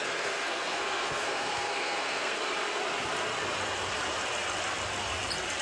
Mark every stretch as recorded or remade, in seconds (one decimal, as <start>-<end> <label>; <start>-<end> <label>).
0.0-2.4 remade; 2.4-5.6 recorded